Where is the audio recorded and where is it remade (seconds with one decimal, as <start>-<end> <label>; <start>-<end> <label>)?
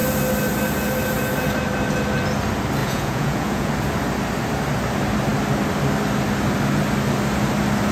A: 0.0-2.8 recorded; 2.8-3.7 remade; 3.7-7.9 recorded